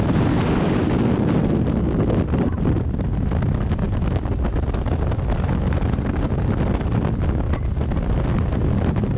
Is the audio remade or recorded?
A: recorded